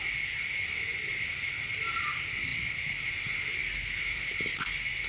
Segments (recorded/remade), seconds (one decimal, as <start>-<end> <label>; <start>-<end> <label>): 0.0-5.1 recorded